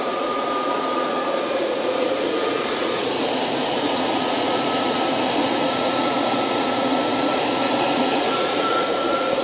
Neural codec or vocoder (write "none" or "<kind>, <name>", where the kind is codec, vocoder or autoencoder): vocoder, Vocos